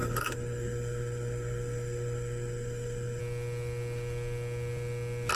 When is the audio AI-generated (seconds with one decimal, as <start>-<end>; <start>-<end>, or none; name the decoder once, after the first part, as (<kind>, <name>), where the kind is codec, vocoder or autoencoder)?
0.0-3.2 (codec, SNAC)